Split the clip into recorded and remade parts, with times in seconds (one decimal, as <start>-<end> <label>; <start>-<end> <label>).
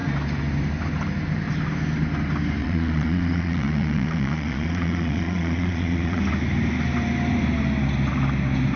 0.0-2.6 recorded; 2.6-6.2 remade; 6.2-8.8 recorded